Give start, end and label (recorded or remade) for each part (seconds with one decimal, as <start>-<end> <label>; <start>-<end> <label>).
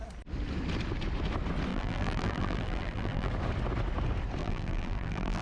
0.0-1.7 recorded; 1.7-3.3 remade; 3.3-4.4 recorded; 4.4-5.4 remade